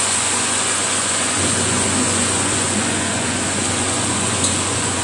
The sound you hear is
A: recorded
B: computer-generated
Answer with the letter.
B